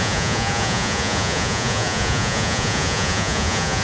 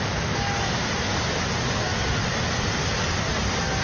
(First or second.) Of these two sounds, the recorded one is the second